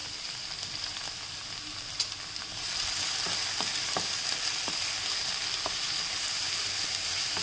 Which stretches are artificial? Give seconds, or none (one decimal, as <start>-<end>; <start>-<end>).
none